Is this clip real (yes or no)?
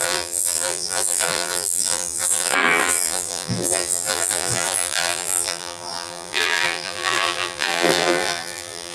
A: no